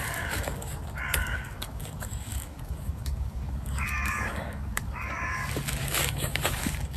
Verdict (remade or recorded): remade